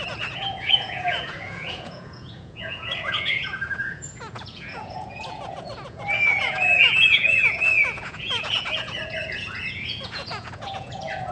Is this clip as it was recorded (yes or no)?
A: no